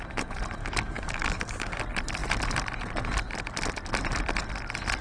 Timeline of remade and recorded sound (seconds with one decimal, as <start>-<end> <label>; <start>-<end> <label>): 0.0-0.6 recorded; 0.6-1.8 remade; 1.8-5.0 recorded